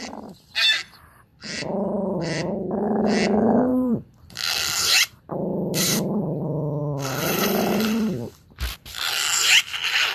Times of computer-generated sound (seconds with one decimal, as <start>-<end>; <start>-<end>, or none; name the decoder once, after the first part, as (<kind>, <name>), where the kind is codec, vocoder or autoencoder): 1.3-2.2 (vocoder, BigVGAN v2); 3.7-4.2; 5.5-6.2; 6.8-9.1